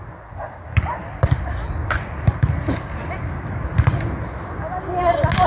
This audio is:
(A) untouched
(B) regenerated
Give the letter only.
A